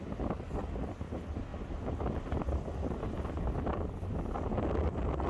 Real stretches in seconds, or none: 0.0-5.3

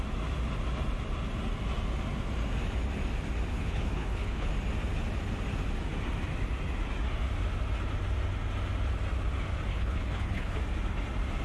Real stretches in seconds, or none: 0.0-3.5; 4.5-9.7; 10.6-11.4

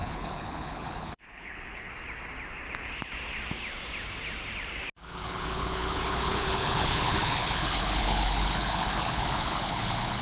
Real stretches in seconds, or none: 1.9-5.0

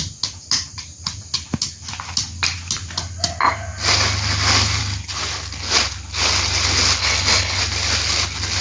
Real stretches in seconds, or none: 0.0-7.0; 7.6-8.6

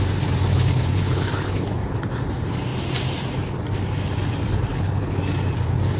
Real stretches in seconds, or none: 0.0-0.5; 1.8-4.7; 5.2-6.0

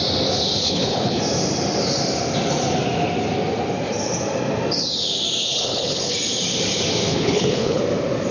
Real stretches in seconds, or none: 0.0-0.6; 1.2-5.4; 6.1-7.1; 7.8-8.3

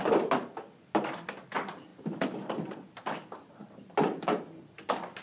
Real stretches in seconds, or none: 0.0-5.2